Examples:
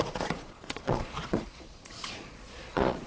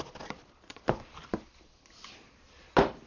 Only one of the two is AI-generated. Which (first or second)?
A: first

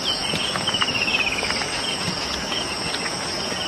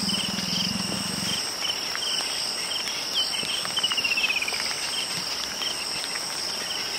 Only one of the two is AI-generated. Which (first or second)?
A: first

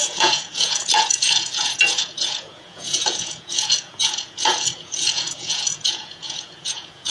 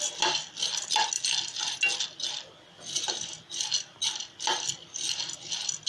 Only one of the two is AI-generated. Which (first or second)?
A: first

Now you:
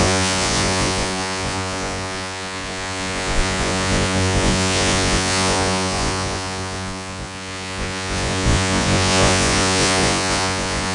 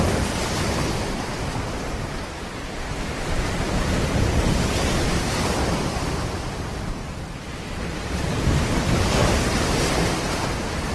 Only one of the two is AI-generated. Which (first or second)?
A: first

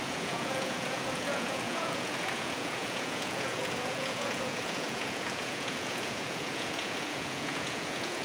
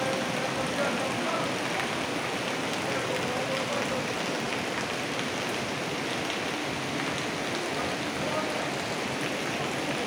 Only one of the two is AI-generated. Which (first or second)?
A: first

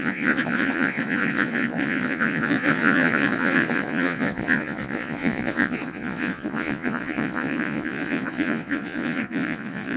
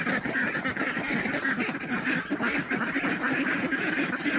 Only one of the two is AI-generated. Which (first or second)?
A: first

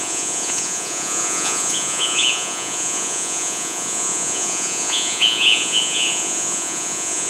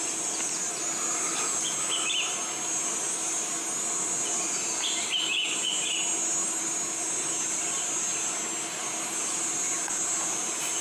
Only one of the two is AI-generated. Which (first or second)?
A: first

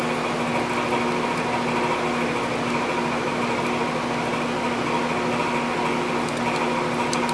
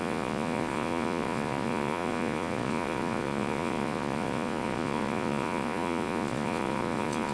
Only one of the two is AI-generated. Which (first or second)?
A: second